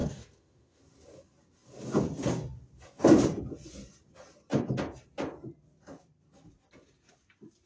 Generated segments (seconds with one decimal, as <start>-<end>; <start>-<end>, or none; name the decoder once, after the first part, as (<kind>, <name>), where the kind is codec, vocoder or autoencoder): 0.0-0.8 (autoencoder, DAC-VAE)